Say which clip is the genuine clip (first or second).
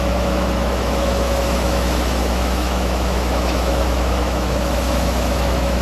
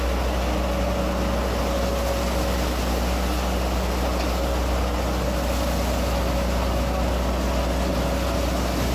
second